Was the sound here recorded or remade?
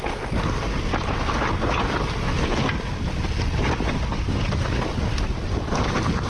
recorded